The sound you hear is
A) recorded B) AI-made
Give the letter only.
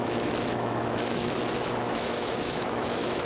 B